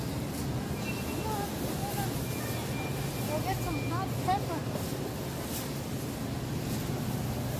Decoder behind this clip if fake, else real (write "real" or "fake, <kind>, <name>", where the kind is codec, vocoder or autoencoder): real